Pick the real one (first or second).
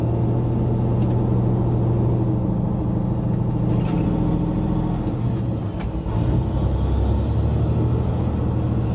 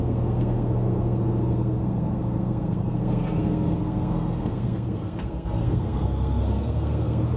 first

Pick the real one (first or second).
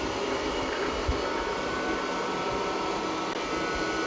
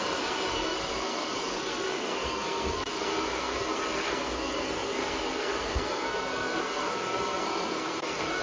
first